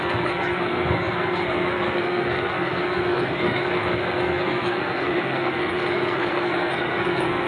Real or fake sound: fake